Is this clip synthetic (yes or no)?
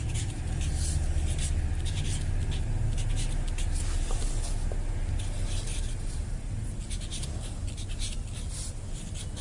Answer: no